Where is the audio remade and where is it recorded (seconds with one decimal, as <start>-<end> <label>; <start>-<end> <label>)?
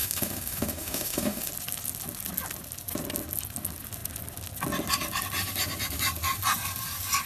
0.0-1.5 remade; 1.5-7.3 recorded